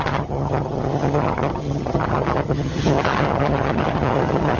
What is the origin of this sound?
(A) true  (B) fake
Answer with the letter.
B